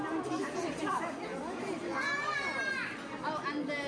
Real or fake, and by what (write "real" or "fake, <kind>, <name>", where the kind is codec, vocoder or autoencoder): real